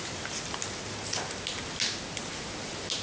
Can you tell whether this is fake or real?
real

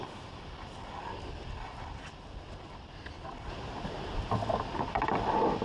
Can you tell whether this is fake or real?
real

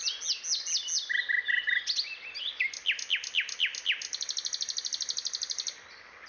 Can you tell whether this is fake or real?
real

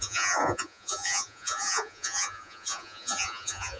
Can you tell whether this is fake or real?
fake